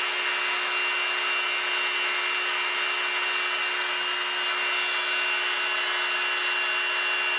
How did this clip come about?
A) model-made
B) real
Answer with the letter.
B